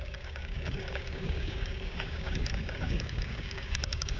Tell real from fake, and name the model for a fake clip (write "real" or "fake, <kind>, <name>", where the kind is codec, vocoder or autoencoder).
fake, codec, DAC